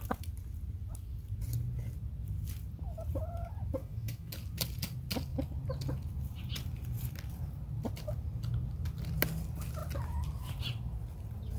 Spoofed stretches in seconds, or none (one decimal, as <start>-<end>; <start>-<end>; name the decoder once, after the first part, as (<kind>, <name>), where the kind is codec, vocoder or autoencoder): 3.8-4.3 (autoencoder, DAC-VAE)